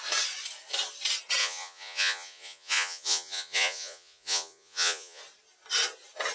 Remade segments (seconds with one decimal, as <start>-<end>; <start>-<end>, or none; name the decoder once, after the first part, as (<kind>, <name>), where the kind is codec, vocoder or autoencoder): 1.4-5.2 (vocoder, Vocos)